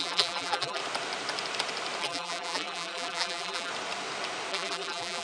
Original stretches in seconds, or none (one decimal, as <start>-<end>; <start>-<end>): 0.8-2.0; 3.7-4.5